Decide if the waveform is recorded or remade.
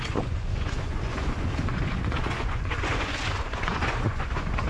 remade